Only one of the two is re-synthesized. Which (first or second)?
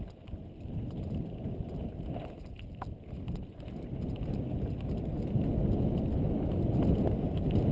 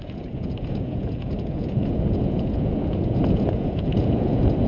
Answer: second